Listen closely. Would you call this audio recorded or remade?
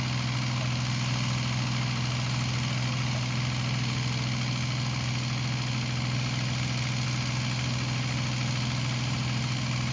recorded